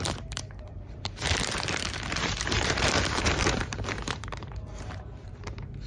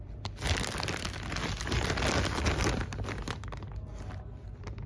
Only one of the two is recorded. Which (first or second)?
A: second